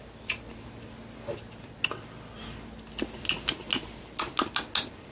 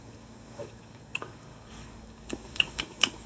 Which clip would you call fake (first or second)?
second